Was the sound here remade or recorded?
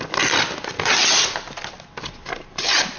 recorded